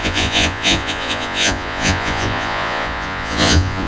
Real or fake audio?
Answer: fake